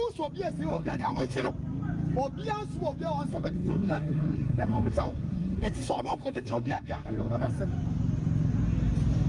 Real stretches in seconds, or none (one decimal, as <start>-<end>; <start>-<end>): 0.0-0.7; 1.5-3.3; 7.5-9.3